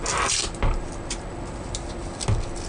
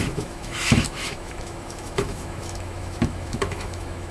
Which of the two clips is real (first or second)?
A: first